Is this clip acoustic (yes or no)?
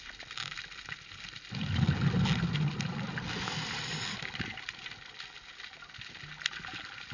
yes